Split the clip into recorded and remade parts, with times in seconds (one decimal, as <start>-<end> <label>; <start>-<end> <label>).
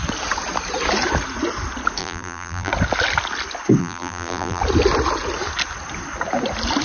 0.0-2.0 recorded; 2.0-2.7 remade; 2.7-3.8 recorded; 3.8-4.6 remade; 4.6-6.8 recorded